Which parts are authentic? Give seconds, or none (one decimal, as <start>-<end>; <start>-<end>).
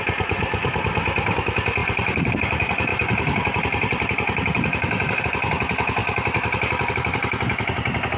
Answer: 0.0-2.9; 5.2-6.0; 6.9-8.2